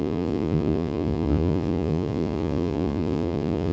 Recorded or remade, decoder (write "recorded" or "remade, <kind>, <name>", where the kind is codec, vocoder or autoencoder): remade, vocoder, Vocos